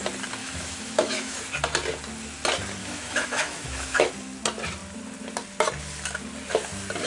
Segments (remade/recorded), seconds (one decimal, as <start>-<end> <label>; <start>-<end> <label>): 0.0-0.4 recorded; 0.4-1.4 remade; 1.4-2.8 recorded; 2.8-4.1 remade; 4.1-7.1 recorded